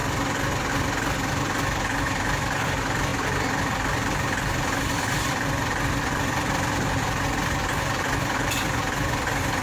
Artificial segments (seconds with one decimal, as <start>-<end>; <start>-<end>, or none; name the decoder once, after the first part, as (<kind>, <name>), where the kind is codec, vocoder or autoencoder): 0.7-9.6 (vocoder, BigVGAN v2)